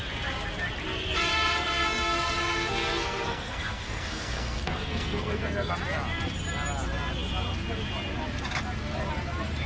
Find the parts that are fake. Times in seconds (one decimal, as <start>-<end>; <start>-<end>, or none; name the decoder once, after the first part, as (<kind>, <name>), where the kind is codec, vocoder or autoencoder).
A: 1.3-5.7 (codec, SNAC)